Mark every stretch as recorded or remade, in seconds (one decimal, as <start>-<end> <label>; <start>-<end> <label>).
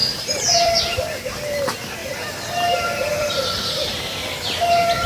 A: 0.0-0.8 remade; 0.8-2.0 recorded; 2.0-4.0 remade; 4.0-5.1 recorded